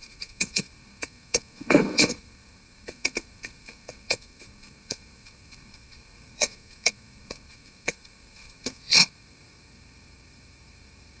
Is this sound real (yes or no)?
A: no